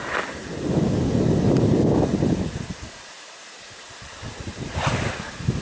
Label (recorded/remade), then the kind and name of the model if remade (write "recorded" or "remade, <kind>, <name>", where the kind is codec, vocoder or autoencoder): recorded